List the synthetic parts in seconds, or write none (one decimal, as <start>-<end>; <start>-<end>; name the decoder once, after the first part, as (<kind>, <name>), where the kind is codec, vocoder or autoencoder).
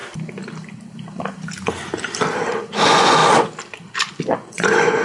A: 2.5-3.2 (vocoder, Vocos); 4.3-5.0